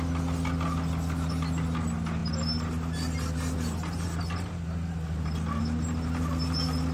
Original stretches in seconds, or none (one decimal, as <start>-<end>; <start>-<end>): 0.0-6.9